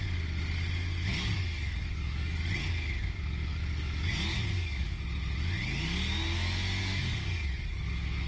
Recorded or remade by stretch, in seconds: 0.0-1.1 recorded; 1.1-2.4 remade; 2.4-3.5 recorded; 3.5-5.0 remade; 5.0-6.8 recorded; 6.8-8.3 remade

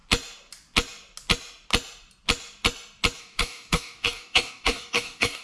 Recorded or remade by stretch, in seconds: 0.0-3.2 recorded; 3.2-5.4 remade

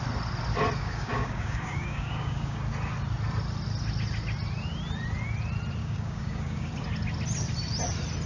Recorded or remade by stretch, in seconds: 0.0-0.8 recorded; 0.8-2.6 remade; 2.6-5.8 recorded; 5.8-6.7 remade; 6.7-8.3 recorded

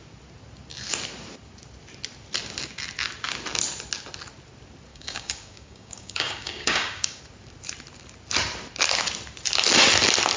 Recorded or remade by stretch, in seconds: 0.0-4.9 recorded; 4.9-7.2 remade; 7.2-10.4 recorded